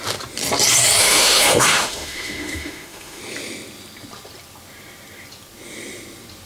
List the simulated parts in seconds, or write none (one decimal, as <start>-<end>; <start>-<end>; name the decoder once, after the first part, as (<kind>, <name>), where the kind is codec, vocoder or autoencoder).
1.0-3.2 (autoencoder, DAC-VAE)